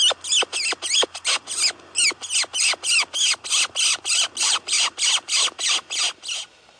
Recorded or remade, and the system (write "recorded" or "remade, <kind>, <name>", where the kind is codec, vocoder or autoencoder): recorded